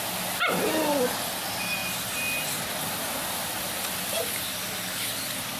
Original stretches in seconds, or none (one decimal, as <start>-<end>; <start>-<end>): 0.0-5.6